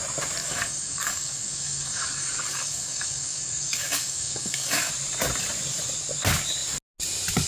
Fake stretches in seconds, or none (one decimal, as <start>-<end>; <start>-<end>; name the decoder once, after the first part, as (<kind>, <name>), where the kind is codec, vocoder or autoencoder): 0.4-4.9 (codec, DAC)